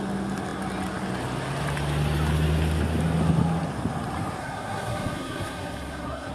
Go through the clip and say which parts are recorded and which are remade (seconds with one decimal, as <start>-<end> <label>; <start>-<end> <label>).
0.0-4.4 recorded; 4.4-6.3 remade